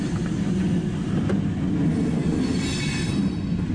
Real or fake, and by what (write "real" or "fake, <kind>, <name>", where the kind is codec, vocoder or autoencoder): real